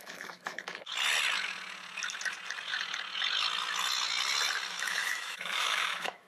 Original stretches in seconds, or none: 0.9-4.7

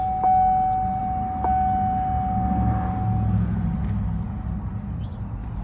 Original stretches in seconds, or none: 0.0-5.6

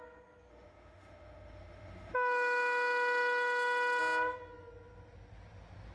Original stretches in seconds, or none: 0.0-0.5; 4.0-5.9

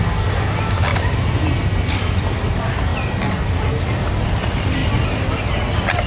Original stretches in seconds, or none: 0.0-6.1

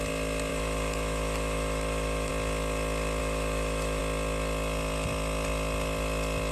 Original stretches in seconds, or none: 0.0-0.5; 2.3-3.2; 4.0-6.5

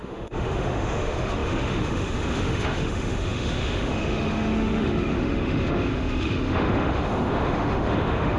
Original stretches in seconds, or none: none

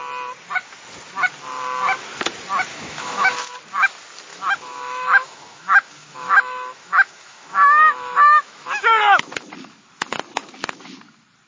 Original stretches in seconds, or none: 0.0-2.7; 3.5-4.3; 9.3-11.5

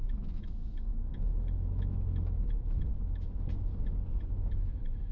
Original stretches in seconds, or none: 3.7-4.3